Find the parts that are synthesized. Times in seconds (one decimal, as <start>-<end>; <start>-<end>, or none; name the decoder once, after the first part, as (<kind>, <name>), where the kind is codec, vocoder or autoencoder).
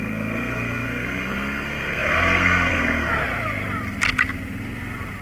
0.0-3.1 (codec, SNAC)